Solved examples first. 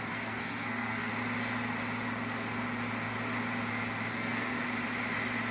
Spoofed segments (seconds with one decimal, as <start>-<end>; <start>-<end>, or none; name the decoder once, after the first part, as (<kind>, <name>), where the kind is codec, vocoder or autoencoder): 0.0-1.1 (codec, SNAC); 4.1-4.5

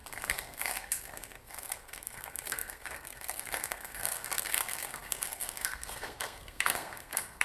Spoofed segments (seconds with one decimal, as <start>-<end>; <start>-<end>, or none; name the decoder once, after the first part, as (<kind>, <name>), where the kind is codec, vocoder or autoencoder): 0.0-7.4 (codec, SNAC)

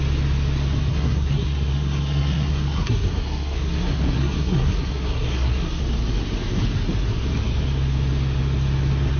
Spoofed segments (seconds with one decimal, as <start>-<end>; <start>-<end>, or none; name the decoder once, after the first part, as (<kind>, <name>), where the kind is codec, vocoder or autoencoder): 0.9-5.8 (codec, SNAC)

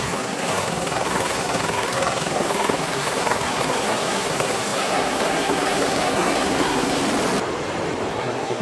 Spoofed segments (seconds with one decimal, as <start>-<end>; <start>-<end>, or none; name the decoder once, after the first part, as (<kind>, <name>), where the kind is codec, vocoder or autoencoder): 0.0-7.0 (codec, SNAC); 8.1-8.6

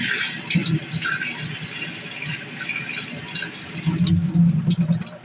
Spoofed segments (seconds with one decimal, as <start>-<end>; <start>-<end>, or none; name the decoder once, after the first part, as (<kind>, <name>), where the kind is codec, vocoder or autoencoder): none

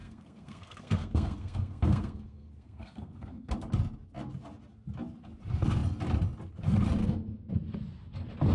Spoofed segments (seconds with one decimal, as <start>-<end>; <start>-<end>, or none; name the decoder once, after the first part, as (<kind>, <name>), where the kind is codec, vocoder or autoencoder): 0.0-3.5 (codec, SNAC); 7.0-7.5

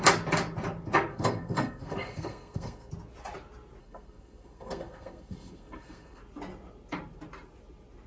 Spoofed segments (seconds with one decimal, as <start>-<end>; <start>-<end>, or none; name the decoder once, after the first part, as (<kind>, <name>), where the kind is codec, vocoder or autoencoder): 1.1-2.9 (codec, SNAC); 3.8-6.2

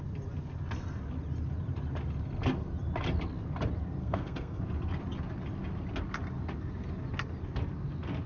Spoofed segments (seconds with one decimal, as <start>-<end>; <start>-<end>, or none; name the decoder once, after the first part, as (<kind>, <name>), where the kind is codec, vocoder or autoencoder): 4.0-4.6 (codec, SNAC)